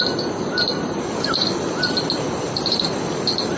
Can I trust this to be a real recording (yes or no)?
yes